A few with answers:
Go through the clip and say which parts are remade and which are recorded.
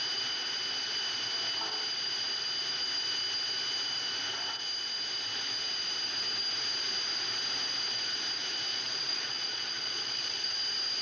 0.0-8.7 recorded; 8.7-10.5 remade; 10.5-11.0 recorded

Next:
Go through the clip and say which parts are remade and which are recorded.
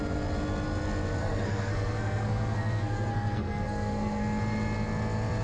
0.0-1.2 recorded; 1.2-4.2 remade; 4.2-5.4 recorded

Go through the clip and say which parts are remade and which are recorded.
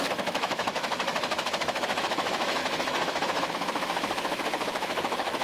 0.0-5.4 remade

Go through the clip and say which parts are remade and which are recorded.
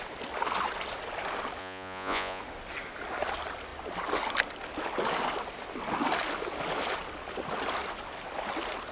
0.0-1.6 recorded; 1.6-2.4 remade; 2.4-8.9 recorded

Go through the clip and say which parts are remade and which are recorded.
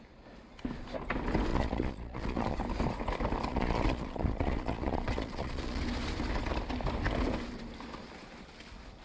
0.0-1.5 recorded; 1.5-2.6 remade; 2.6-3.5 recorded; 3.5-5.8 remade; 5.8-9.0 recorded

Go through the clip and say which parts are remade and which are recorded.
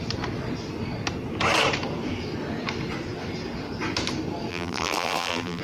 0.0-4.5 recorded; 4.5-5.6 remade